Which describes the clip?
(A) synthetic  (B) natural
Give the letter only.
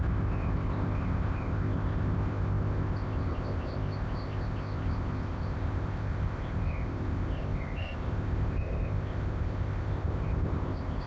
A